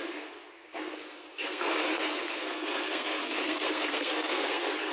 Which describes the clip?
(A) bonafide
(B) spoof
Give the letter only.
B